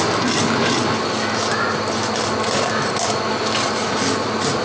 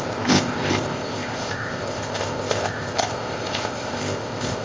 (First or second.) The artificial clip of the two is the second